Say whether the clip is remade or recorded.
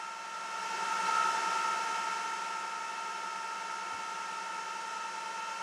recorded